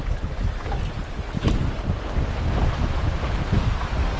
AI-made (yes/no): no